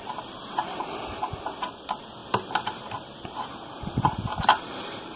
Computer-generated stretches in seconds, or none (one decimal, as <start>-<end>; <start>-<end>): none